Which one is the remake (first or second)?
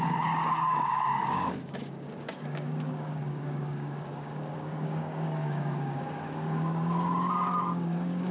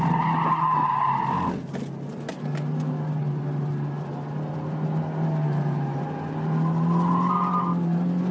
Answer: first